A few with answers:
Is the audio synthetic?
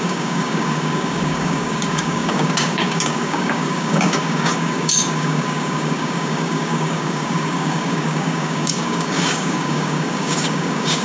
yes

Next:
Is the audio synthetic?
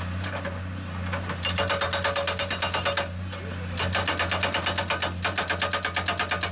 no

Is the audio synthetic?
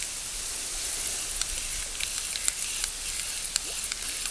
no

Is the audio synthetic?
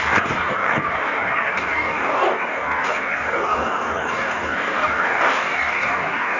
yes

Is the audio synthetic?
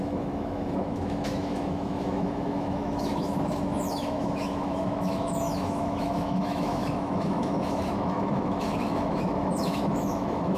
yes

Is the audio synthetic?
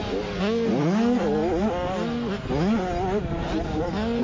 no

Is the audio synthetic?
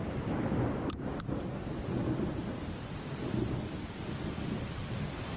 no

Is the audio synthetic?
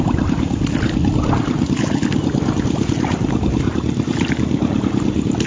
no